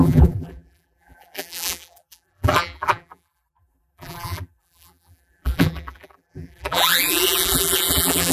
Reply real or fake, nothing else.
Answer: fake